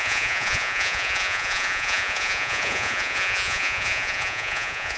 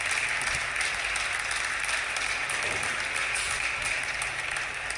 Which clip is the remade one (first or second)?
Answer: first